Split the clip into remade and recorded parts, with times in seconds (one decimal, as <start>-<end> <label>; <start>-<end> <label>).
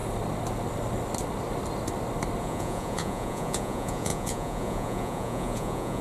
0.0-2.4 recorded; 2.4-6.0 remade